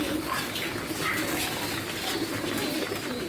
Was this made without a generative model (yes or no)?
yes